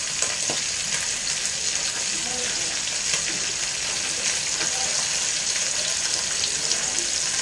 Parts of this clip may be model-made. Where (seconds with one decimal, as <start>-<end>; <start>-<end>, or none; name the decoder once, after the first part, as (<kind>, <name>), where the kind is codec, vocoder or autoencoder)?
none